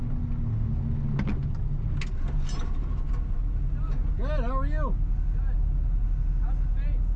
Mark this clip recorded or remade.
recorded